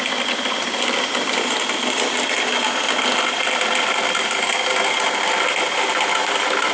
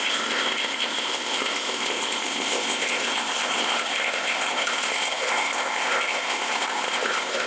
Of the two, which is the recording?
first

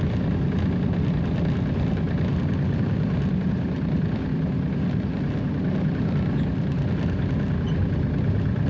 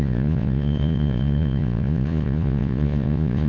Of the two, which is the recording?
first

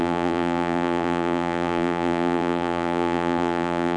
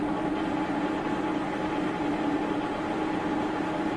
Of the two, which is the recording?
second